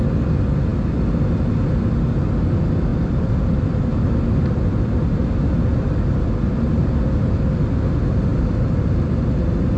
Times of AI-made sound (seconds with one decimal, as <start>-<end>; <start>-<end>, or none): 2.9-7.8; 8.3-9.1